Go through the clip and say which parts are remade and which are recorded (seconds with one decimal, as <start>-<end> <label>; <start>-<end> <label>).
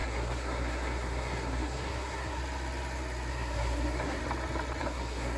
0.0-2.4 remade; 2.4-3.3 recorded; 3.3-4.2 remade; 4.2-4.8 recorded; 4.8-5.4 remade